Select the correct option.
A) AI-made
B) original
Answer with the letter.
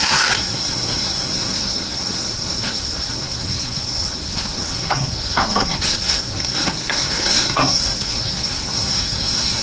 A